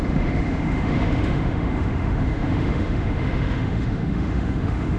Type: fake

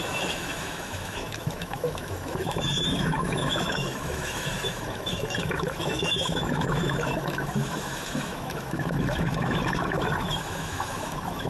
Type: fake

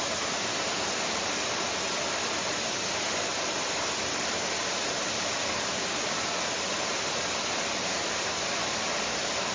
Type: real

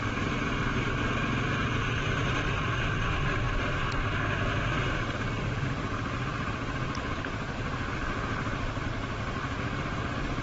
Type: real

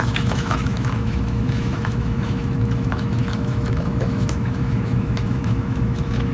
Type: fake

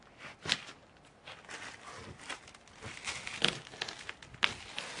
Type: real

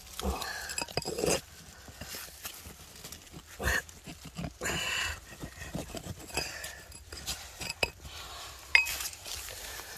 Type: real